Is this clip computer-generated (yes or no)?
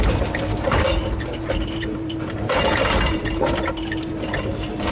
yes